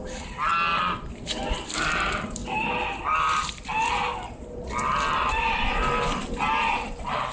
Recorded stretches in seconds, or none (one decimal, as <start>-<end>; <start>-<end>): 0.0-7.3